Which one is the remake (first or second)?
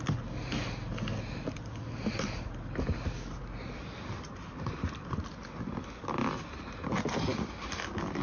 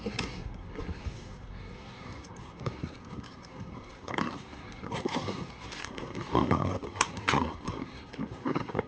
second